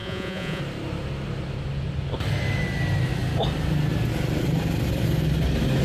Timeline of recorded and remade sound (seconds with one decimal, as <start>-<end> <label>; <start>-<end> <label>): 0.0-0.6 remade; 0.6-5.8 recorded